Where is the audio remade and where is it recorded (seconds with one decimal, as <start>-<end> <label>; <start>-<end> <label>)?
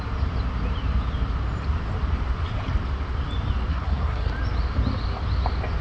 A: 0.0-3.7 recorded; 3.7-4.3 remade; 4.3-5.8 recorded